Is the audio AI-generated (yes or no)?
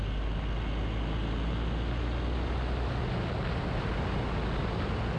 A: no